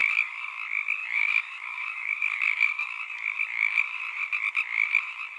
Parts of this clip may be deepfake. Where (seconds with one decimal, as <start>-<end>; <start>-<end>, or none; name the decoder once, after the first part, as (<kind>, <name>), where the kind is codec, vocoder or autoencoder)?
0.0-0.5 (codec, DAC); 1.0-3.0